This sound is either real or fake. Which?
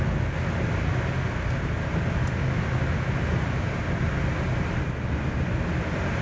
real